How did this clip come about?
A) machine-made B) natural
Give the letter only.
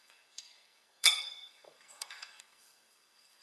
A